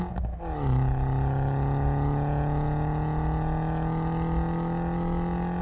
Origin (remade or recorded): recorded